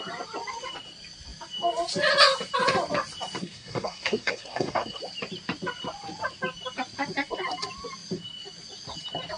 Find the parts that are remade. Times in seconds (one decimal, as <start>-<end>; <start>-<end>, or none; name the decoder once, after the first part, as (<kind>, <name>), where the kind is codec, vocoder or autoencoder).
3.4-5.0 (codec, SNAC)